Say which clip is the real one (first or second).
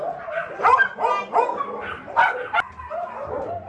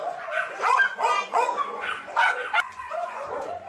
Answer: first